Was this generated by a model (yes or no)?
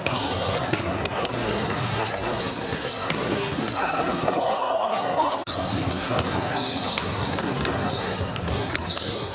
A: yes